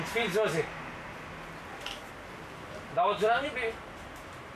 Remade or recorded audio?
recorded